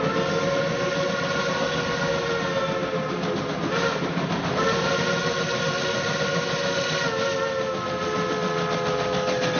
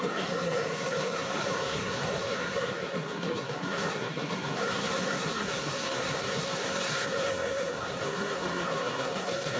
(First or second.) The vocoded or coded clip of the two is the second